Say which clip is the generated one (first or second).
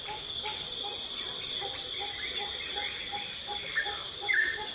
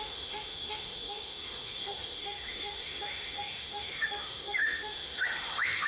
second